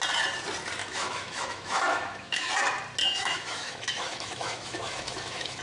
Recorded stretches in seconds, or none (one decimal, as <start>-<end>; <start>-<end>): 0.0-0.8; 2.5-3.0